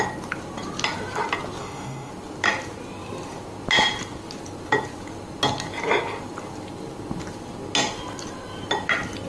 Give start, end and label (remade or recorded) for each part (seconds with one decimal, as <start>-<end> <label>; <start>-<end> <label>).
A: 0.0-1.6 recorded; 1.6-2.1 remade; 2.1-9.3 recorded